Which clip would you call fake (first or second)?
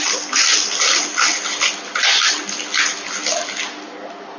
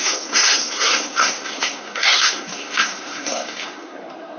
second